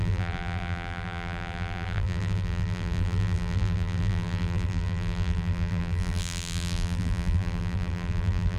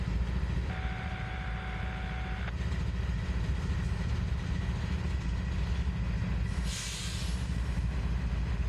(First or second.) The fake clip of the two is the first